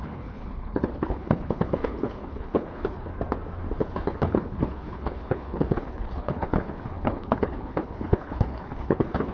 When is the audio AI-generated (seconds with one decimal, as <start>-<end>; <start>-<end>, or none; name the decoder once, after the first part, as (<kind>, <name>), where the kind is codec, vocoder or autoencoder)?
0.0-3.1 (codec, HILCodec); 3.8-9.3